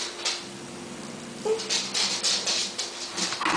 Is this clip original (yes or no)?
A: yes